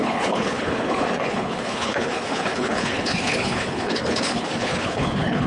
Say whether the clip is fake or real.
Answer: fake